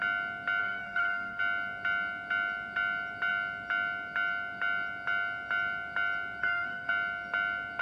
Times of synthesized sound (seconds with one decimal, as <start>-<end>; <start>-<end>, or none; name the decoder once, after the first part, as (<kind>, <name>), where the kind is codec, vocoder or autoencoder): 0.6-1.4 (codec, SNAC); 6.4-6.9

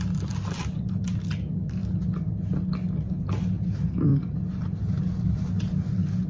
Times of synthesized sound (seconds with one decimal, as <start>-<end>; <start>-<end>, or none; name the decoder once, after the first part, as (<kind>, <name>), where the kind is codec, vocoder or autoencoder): none

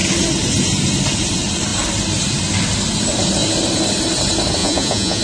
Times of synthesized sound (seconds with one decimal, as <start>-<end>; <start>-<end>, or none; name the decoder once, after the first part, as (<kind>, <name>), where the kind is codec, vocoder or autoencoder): 4.6-5.2 (vocoder, Vocos)

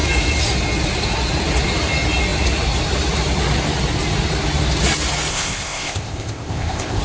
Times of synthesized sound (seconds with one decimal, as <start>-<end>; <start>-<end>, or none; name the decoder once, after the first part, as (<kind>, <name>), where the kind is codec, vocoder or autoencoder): 5.3-7.0 (codec, ZipCodec)

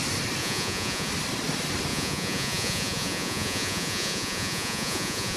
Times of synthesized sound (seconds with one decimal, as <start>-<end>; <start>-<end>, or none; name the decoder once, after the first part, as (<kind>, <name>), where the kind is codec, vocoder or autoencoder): 0.4-1.1 (vocoder, Vocos); 1.9-5.4

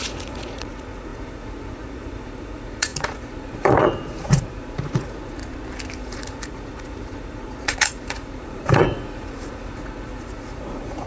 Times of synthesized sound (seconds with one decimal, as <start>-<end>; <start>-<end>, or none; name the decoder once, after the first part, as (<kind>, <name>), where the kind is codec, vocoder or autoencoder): 0.0-5.4 (vocoder, Vocos); 6.0-11.1

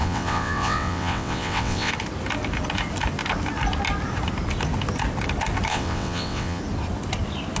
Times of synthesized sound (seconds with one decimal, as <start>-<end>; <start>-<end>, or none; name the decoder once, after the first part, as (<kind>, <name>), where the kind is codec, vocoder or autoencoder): 0.0-1.9 (vocoder, WaveNeXt); 5.7-6.6